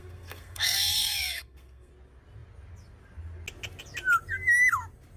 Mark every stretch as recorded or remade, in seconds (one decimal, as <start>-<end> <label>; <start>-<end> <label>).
0.0-1.9 remade; 1.9-5.2 recorded